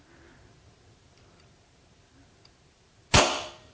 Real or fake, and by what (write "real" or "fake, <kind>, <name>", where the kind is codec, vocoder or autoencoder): real